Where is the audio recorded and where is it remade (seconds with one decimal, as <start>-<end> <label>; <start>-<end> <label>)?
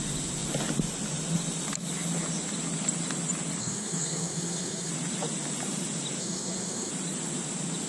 0.0-3.6 recorded; 3.6-4.9 remade; 4.9-6.2 recorded; 6.2-6.9 remade; 6.9-7.9 recorded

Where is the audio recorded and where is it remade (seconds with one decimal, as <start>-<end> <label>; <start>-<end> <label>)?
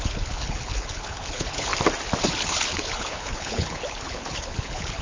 0.0-1.7 remade; 1.7-2.2 recorded; 2.2-5.0 remade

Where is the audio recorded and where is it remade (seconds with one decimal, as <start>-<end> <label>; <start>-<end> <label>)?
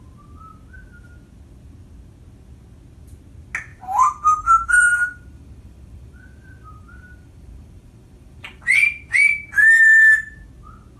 0.0-3.7 recorded; 3.7-8.6 remade; 8.6-11.0 recorded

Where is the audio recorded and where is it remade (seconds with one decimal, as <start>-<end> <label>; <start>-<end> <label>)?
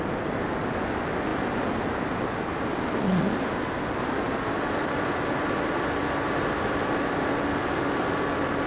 0.0-8.7 recorded